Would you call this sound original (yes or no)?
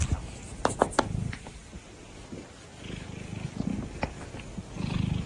yes